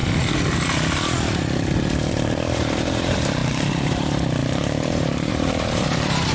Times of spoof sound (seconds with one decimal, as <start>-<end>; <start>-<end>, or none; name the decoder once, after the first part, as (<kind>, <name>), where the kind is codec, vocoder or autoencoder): 2.1-3.4 (vocoder, BigVGAN v2); 3.9-6.3

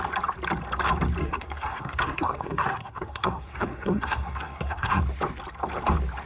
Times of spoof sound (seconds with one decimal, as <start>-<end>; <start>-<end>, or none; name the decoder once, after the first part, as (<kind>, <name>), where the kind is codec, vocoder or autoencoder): 1.2-5.0 (codec, SNAC)

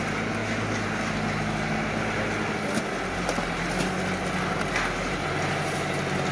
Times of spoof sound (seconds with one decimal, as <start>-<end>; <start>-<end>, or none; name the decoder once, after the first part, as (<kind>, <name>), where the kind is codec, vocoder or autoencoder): none

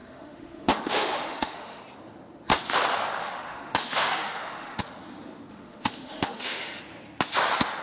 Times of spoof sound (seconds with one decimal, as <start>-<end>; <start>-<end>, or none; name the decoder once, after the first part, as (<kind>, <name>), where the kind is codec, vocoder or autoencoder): 0.0-1.8 (autoencoder, DAC-VAE); 3.2-4.8; 5.5-6.8

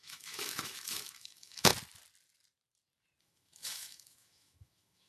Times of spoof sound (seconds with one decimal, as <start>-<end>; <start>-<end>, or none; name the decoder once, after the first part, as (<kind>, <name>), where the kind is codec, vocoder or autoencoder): 0.0-1.7 (autoencoder, DAC-VAE); 3.2-5.1

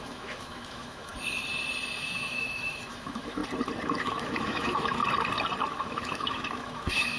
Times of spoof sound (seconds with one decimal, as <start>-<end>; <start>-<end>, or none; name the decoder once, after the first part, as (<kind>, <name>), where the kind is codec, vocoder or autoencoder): 0.0-1.1 (autoencoder, DAC-VAE); 2.0-3.4; 4.0-5.0; 5.7-7.2